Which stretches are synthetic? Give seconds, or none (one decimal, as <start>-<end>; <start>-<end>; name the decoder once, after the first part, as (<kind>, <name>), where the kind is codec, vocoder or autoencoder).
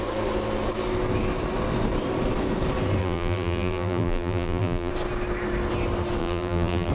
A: 3.0-4.9 (vocoder, BigVGAN v2); 6.2-6.9